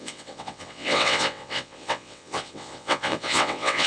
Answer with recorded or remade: remade